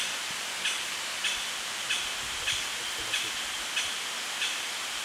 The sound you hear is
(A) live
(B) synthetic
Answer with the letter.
A